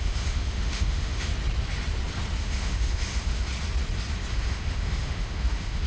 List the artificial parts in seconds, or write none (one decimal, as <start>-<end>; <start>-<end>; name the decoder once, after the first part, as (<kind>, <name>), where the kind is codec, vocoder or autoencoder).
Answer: 0.0-1.3 (autoencoder, DAC-VAE); 2.4-3.5; 4.3-5.9